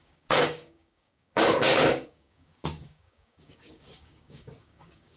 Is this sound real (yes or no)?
no